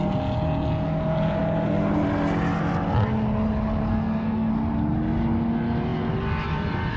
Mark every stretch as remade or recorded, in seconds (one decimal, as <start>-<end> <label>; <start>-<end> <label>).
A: 0.0-3.9 recorded; 3.9-4.5 remade; 4.5-7.0 recorded